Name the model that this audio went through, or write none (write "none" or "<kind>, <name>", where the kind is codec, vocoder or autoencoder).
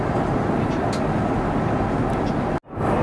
none